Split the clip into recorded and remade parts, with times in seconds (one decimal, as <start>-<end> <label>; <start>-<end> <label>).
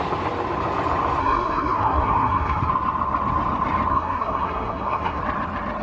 0.0-1.2 recorded; 1.2-2.7 remade; 2.7-3.9 recorded; 3.9-5.2 remade; 5.2-5.8 recorded